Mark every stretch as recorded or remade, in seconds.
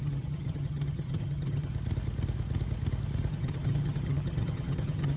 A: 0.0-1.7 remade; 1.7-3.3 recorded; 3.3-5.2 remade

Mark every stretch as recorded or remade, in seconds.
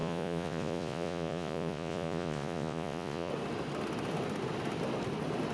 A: 0.0-3.3 remade; 3.3-5.5 recorded